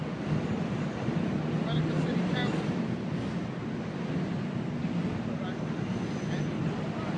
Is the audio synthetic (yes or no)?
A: no